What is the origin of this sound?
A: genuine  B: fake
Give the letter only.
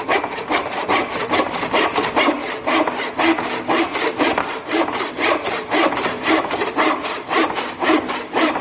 A